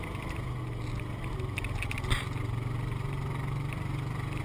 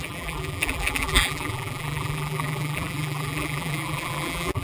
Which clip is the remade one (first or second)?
second